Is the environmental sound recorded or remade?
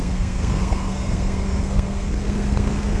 remade